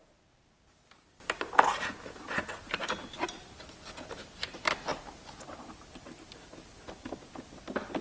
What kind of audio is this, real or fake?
real